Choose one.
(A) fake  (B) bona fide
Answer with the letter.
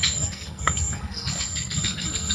A